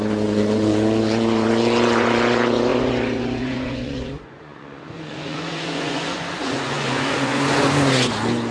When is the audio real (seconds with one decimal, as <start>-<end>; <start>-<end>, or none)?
none